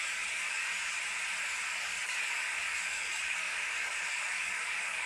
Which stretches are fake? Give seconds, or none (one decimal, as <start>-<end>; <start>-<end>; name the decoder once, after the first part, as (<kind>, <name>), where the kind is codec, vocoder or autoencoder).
0.0-0.7 (codec, DAC); 1.5-5.1